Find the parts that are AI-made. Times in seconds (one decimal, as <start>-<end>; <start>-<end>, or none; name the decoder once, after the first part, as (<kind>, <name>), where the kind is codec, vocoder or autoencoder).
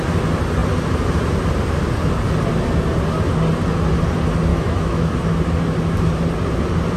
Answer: 4.5-5.1 (autoencoder, DAC-VAE)